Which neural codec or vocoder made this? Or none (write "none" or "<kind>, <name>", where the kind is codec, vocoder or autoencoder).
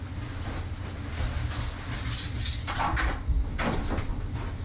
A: none